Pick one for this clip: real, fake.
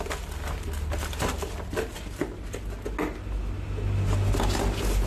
real